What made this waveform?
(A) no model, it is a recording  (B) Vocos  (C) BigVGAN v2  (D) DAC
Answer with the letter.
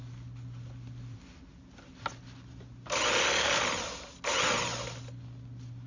A